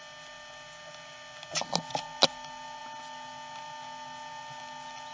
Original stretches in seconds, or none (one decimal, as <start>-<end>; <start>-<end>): 0.0-5.1